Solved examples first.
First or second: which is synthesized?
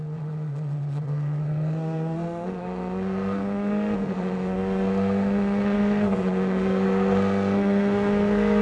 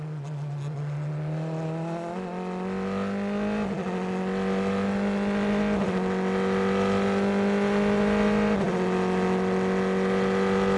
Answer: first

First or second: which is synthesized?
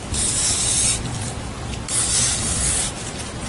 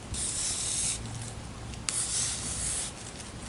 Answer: first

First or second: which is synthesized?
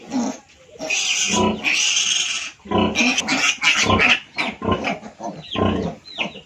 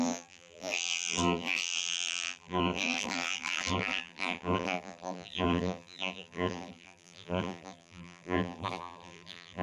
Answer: second